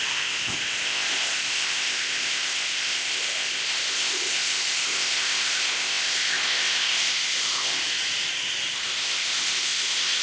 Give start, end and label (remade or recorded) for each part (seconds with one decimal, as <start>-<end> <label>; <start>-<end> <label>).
0.0-7.8 remade; 7.8-8.7 recorded; 8.7-10.2 remade